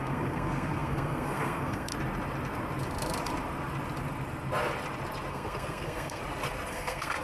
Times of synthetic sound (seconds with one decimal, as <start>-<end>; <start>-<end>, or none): 0.0-1.9; 5.3-6.2; 6.7-7.2